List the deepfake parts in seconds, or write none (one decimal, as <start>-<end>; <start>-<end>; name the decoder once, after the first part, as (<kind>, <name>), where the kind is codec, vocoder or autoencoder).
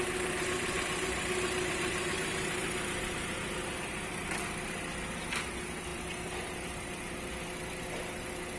none